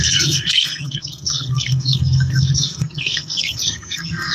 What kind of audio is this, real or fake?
fake